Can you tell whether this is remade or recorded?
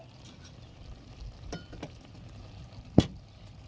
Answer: recorded